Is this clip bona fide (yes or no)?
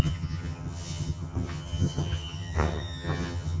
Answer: no